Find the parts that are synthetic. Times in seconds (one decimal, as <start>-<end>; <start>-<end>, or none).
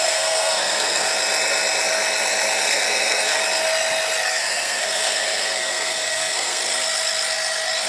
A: 0.0-1.1; 2.6-3.4; 4.3-6.6